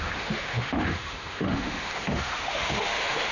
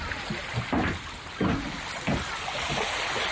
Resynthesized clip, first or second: first